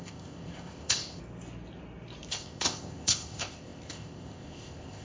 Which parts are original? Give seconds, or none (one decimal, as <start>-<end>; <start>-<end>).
1.2-2.3

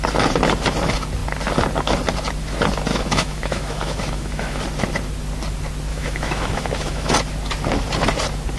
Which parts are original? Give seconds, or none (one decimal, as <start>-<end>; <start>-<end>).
0.0-2.9; 4.6-5.9; 7.1-8.6

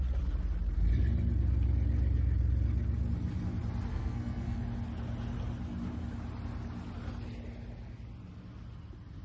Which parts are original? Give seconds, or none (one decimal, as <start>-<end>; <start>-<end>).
0.0-3.9; 4.6-9.2

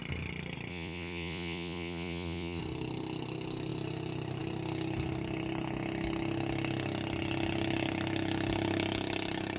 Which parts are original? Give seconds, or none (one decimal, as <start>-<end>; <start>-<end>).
0.0-0.7; 2.6-9.6

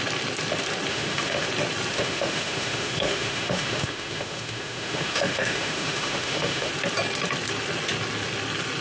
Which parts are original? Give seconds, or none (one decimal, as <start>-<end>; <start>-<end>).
0.0-0.9; 1.5-1.9; 6.7-8.8

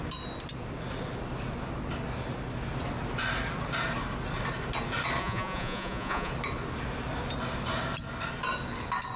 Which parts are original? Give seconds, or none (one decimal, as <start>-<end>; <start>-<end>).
0.0-5.2; 6.3-9.2

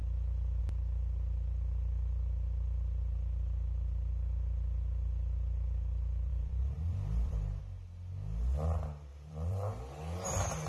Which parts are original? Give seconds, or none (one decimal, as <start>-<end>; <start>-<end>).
0.0-6.3; 7.6-9.1; 9.8-10.7

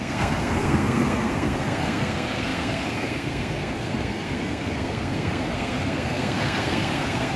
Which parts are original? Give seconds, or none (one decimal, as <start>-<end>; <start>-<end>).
none